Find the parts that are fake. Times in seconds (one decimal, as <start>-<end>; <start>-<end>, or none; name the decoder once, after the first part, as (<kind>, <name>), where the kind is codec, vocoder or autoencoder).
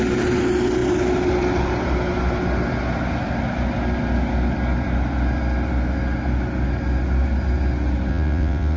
8.1-8.8 (vocoder, WaveNeXt)